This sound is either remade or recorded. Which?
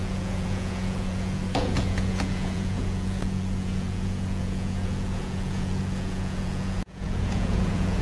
remade